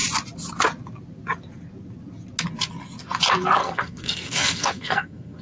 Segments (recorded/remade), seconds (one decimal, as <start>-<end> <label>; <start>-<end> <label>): 0.0-3.6 recorded; 3.6-5.4 remade